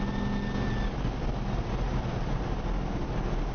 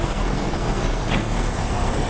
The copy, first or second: second